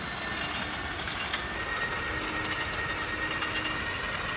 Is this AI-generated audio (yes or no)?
no